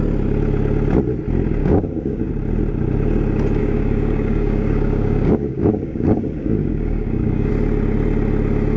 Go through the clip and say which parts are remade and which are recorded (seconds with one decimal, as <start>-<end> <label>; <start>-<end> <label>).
0.0-1.6 recorded; 1.6-2.3 remade; 2.3-3.6 recorded; 3.6-7.5 remade; 7.5-8.8 recorded